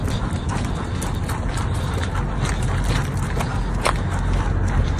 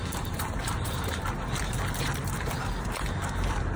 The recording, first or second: first